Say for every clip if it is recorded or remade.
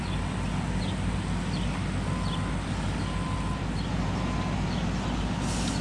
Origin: recorded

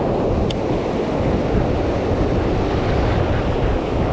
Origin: recorded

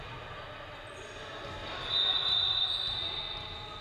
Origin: recorded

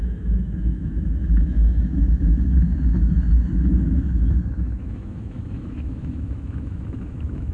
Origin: remade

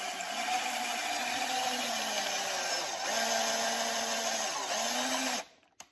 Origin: recorded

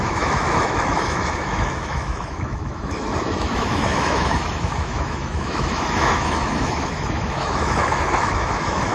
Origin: remade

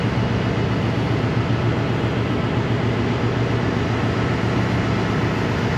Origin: recorded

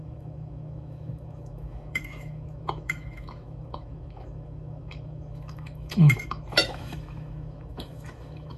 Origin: remade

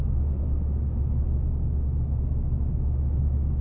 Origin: remade